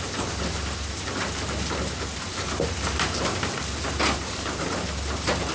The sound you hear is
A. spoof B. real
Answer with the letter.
B